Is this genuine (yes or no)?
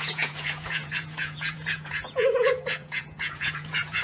no